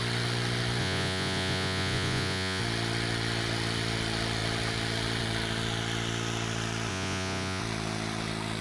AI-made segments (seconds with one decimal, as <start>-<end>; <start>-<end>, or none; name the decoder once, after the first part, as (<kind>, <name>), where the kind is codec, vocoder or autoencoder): 0.8-2.6 (vocoder, Vocos); 6.9-7.6